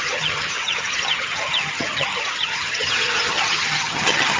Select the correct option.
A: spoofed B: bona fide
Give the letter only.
A